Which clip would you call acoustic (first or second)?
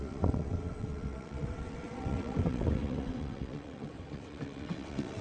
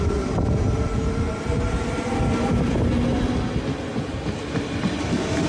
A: second